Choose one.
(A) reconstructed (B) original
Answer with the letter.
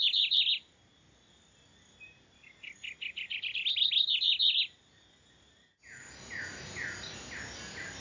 B